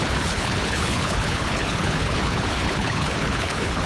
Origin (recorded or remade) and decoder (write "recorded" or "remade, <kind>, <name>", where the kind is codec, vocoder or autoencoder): remade, codec, HILCodec